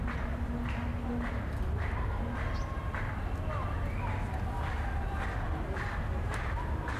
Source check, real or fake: real